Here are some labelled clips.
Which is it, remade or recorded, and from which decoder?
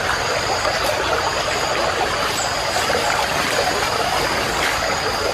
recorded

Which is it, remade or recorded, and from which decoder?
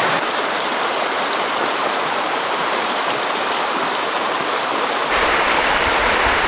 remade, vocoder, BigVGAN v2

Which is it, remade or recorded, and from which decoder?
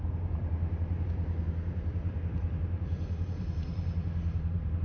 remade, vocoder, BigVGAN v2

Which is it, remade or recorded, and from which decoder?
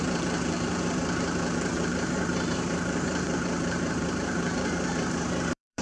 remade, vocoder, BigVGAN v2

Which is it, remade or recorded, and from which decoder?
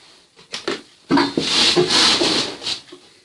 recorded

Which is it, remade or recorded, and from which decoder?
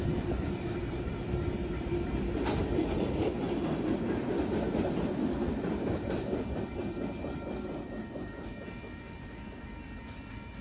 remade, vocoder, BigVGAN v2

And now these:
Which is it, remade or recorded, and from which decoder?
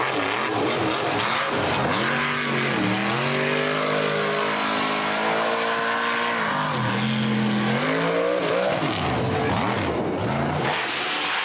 recorded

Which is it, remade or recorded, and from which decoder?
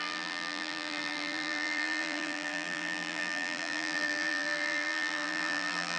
remade, vocoder, BigVGAN v2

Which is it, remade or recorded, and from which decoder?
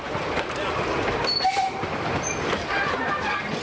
recorded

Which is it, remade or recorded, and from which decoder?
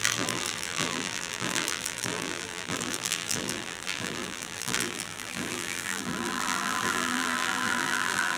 remade, vocoder, BigVGAN v2